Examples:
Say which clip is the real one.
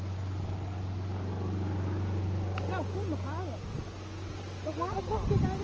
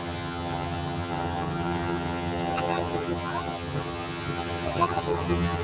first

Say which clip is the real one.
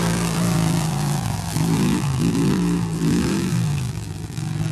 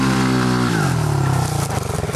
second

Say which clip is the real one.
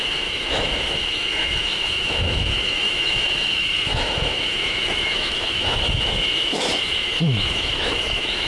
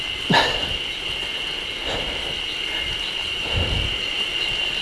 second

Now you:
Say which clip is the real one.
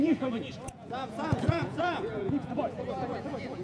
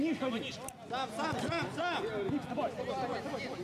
second